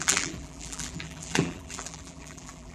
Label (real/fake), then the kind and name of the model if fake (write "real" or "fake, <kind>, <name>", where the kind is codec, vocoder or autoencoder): fake, vocoder, BigVGAN v2